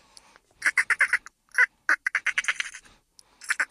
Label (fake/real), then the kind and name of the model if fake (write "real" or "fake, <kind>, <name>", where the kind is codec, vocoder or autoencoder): real